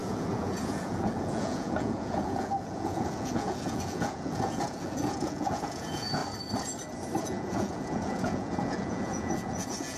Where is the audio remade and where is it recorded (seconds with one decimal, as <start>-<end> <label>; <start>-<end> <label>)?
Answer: 0.0-6.2 remade; 6.2-7.2 recorded; 7.2-10.0 remade